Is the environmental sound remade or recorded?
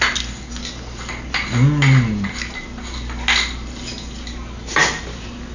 recorded